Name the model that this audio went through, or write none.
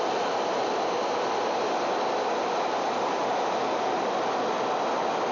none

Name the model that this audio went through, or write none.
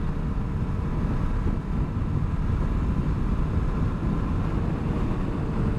none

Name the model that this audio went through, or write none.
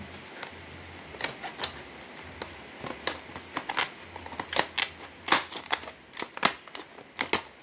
none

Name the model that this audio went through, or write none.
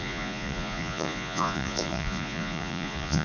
vocoder, Vocos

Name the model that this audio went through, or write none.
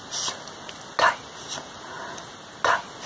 none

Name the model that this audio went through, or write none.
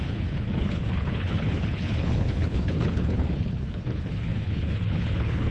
codec, HILCodec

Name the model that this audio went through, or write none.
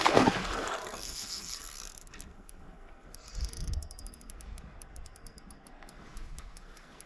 codec, SNAC